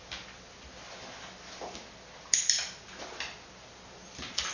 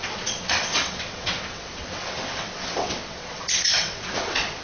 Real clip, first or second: first